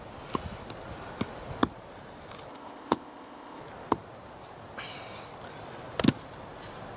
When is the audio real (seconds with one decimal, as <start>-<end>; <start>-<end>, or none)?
0.0-2.5; 3.6-7.0